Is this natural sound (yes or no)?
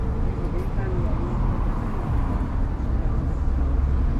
yes